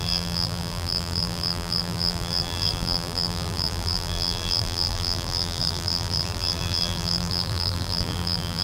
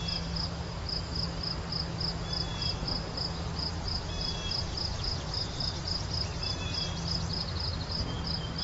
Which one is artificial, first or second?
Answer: first